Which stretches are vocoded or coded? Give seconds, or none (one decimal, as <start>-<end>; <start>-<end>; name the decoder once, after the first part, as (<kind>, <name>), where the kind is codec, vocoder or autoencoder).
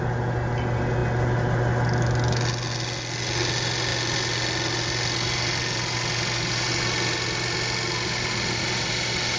none